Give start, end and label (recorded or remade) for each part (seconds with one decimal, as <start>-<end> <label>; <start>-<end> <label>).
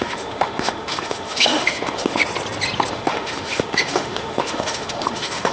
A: 0.0-2.2 remade; 2.2-2.9 recorded; 2.9-5.5 remade